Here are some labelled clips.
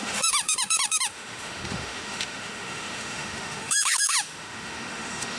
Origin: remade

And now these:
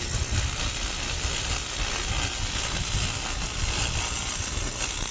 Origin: recorded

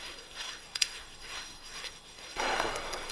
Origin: remade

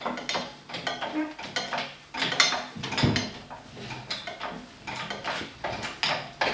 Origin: recorded